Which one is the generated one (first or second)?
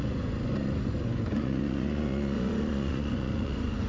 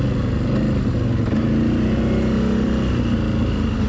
first